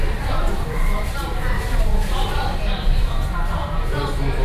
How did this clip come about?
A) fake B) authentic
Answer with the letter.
A